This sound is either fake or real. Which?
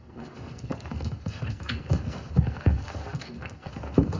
fake